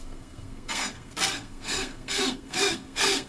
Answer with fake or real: fake